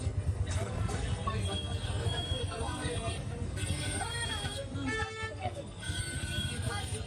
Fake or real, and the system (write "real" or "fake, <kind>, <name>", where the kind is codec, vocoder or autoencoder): fake, codec, SNAC